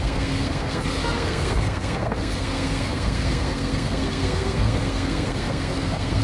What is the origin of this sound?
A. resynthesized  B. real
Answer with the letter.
A